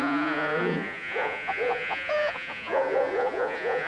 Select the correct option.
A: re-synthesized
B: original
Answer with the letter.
A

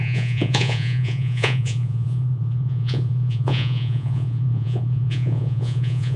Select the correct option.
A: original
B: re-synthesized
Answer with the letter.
B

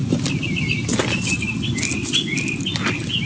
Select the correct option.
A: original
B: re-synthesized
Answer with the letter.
A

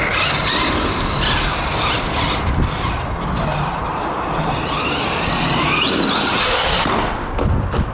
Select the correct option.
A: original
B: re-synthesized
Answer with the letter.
A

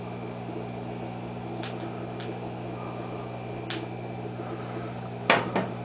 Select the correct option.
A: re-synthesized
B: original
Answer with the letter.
B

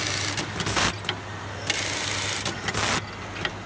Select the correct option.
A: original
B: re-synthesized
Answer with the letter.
A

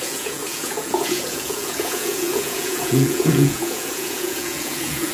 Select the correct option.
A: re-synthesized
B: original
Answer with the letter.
A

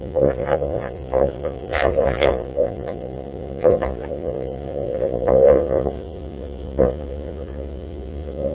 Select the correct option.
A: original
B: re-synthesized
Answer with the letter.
B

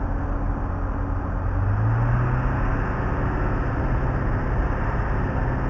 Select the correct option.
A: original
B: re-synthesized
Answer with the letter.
A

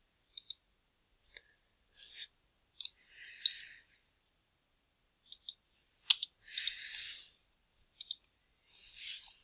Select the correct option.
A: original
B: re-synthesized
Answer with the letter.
A